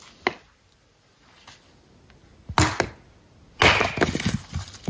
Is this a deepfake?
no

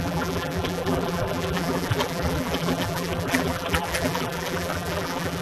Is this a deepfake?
yes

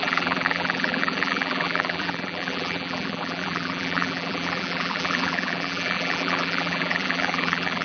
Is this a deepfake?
yes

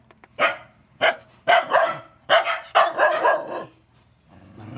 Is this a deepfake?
yes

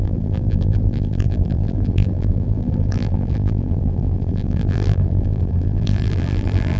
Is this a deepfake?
yes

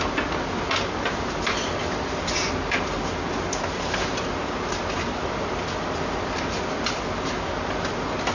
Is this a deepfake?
no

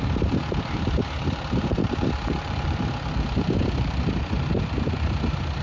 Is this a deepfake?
yes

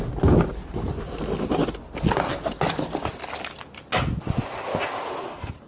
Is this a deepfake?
no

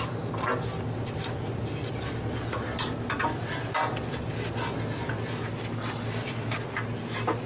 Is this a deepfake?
no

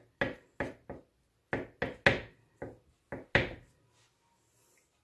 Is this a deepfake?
no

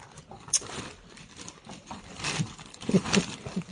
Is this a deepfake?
yes